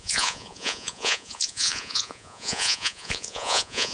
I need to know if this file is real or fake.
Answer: fake